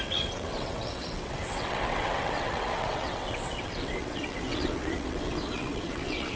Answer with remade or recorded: remade